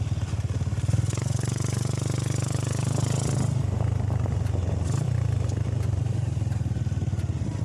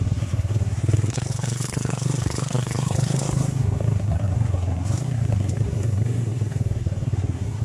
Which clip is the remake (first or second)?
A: second